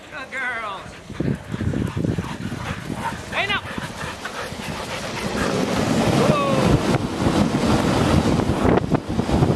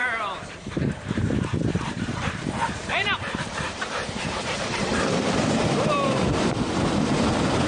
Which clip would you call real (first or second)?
first